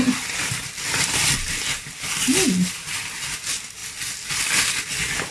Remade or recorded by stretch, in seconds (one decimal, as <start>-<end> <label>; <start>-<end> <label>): 0.0-5.3 recorded